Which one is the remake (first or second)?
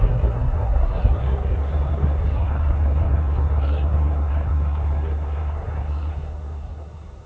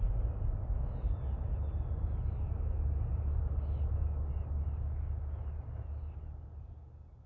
first